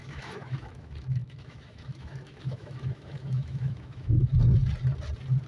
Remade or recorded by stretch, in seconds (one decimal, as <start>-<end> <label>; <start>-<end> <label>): 0.0-4.3 remade; 4.3-5.5 recorded